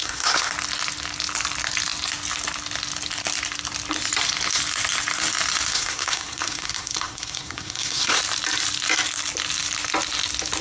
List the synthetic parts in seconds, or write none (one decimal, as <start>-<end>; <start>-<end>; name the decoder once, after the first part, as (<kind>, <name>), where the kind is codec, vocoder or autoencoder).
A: 0.0-0.5 (codec, SNAC); 5.7-8.2